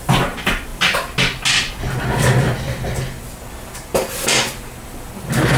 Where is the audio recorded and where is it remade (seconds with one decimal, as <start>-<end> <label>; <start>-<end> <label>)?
0.0-5.6 recorded